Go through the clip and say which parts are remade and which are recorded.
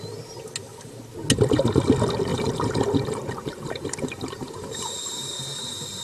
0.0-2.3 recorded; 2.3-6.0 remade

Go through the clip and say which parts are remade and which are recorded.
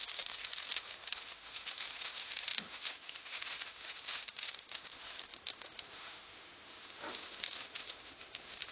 0.0-8.7 remade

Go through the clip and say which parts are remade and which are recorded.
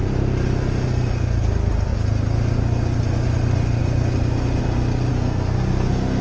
0.0-5.1 recorded; 5.1-6.2 remade